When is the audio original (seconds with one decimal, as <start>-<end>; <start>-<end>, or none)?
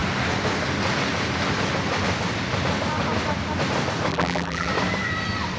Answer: 0.0-4.1; 4.7-5.6